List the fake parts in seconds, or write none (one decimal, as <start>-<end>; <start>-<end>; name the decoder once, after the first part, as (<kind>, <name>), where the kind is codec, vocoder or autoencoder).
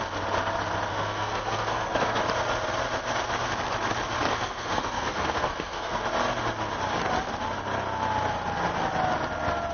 0.9-2.2 (codec, SNAC); 4.3-6.0